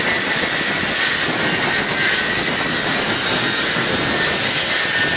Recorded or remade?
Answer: recorded